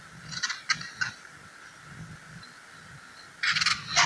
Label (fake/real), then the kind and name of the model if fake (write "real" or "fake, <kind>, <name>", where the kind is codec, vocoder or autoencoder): real